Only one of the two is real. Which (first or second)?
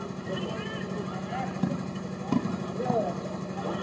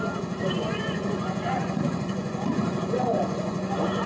first